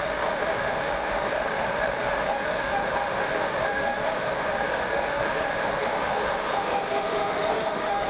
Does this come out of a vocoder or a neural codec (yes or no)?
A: yes